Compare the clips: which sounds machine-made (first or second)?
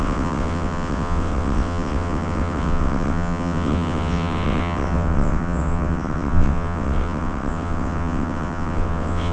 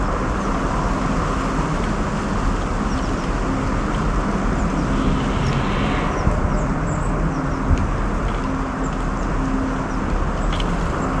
first